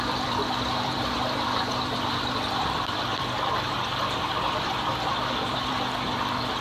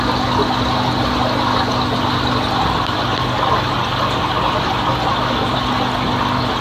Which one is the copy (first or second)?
first